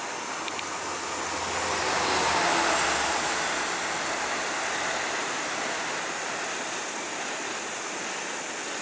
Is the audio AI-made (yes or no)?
no